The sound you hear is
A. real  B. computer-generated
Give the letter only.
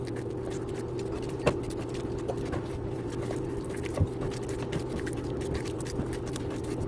A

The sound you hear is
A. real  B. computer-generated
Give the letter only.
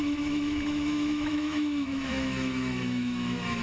B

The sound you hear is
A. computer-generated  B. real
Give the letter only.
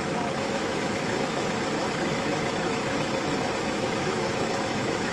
A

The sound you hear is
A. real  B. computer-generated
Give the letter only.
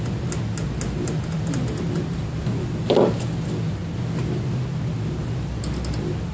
A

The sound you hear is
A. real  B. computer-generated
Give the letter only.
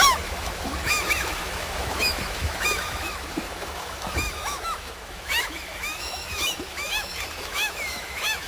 B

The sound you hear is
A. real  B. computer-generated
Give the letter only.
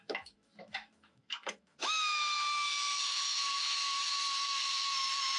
B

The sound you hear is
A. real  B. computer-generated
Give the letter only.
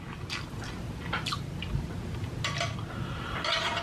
A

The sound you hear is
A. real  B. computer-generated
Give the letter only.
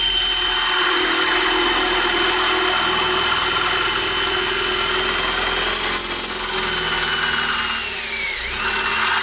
A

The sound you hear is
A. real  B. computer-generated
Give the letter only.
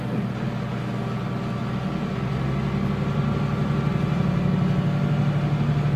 A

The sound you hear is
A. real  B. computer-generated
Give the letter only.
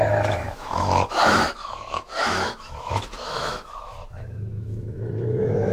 B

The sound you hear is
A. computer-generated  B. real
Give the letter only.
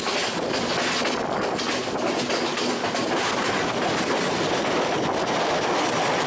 B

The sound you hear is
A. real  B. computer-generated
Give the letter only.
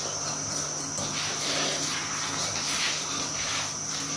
A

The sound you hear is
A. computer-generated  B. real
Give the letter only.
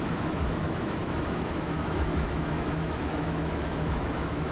A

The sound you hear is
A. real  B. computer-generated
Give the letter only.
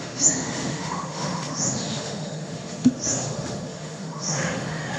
B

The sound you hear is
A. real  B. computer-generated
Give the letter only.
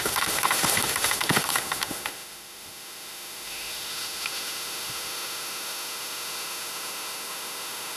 B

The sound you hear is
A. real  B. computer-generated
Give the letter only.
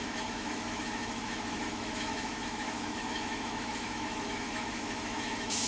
B